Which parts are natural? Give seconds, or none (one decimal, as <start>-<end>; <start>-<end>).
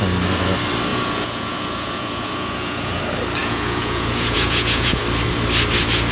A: 0.0-0.9; 3.0-3.4; 5.0-6.1